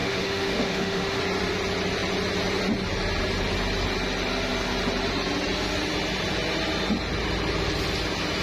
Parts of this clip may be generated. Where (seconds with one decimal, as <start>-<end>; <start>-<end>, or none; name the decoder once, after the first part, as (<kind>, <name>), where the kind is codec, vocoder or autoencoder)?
0.0-1.2 (autoencoder, DAC-VAE)